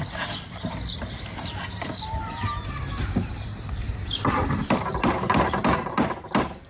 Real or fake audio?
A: real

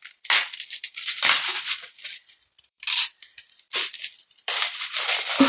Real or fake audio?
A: fake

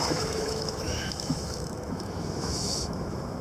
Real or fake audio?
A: fake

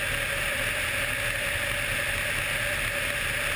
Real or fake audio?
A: real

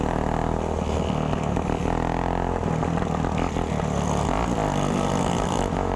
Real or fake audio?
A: real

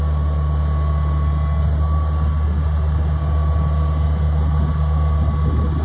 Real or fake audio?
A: real